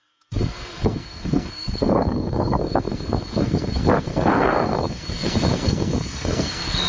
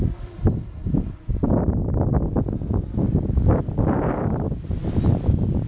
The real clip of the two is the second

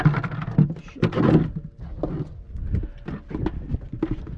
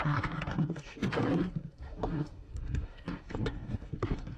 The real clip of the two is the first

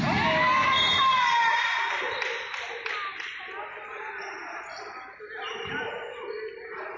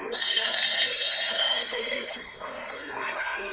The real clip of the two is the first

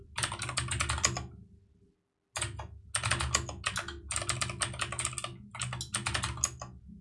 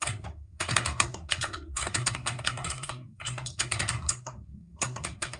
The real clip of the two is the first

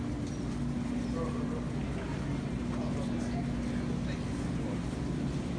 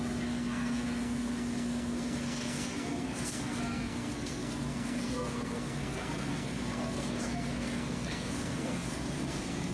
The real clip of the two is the first